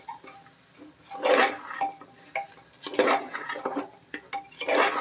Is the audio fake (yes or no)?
no